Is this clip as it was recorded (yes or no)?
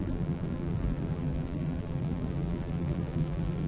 no